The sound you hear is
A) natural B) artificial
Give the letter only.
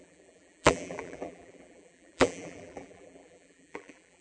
B